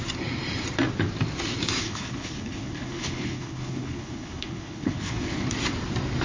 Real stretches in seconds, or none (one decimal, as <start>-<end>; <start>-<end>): 0.0-1.8; 5.5-6.2